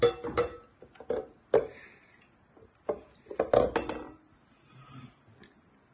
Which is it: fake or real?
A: real